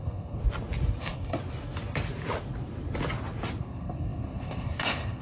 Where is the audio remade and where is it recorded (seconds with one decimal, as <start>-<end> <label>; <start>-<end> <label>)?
0.0-0.4 remade; 0.4-1.0 recorded; 1.0-1.4 remade; 1.4-3.6 recorded; 3.6-5.2 remade